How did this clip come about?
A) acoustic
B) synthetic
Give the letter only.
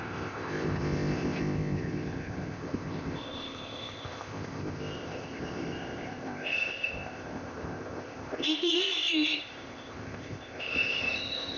B